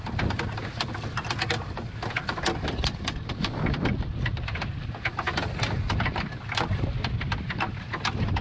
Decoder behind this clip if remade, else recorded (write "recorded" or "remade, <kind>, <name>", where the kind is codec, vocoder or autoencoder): recorded